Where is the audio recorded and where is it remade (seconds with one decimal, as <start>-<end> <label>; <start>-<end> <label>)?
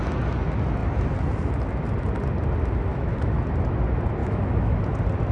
0.0-2.9 recorded; 2.9-3.4 remade; 3.4-4.2 recorded; 4.2-4.8 remade; 4.8-5.3 recorded